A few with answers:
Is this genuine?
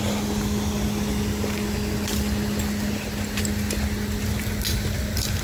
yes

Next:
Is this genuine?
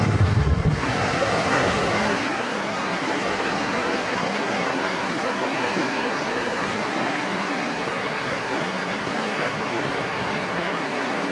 no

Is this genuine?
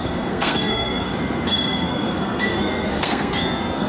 no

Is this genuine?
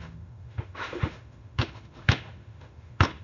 no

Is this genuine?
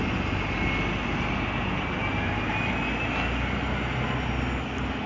yes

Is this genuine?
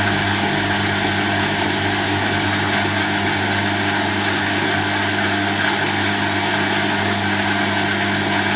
yes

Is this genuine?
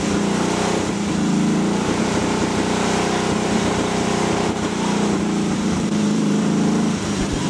no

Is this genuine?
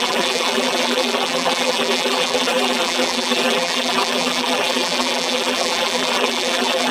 no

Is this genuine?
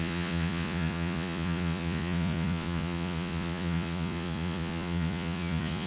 no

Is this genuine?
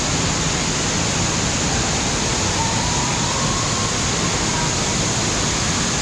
yes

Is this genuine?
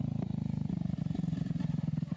yes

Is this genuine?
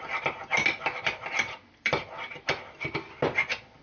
yes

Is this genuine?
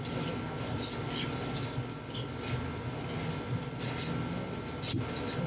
yes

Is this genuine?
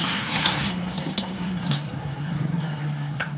no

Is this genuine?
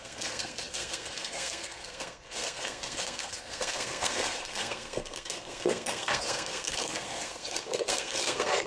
no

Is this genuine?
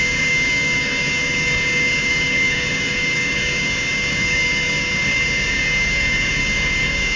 no